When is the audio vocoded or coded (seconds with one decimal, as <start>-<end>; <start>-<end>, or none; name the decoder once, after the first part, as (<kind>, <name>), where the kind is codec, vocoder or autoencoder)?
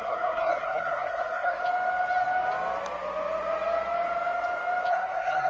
0.0-1.6 (codec, SNAC); 4.9-5.5